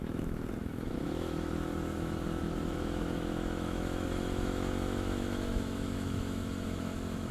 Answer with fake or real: fake